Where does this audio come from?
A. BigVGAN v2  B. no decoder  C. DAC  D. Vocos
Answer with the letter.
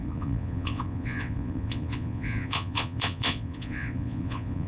D